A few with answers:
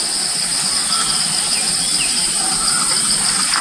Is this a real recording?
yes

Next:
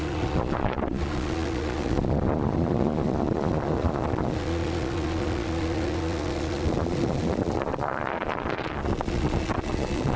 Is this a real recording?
no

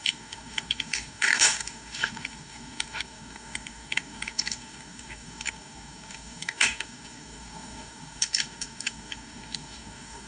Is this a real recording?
no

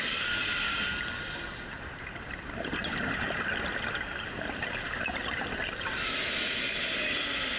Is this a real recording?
yes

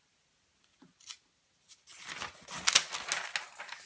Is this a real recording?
yes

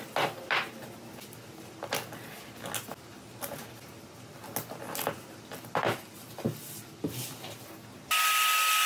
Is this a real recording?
yes